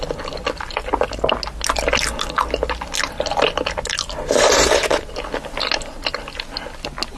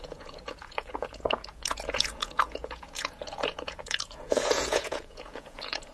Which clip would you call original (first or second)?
first